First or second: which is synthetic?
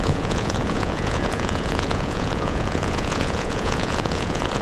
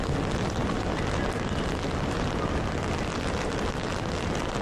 first